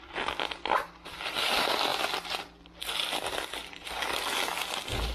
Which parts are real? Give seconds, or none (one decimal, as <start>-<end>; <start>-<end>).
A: 0.0-5.1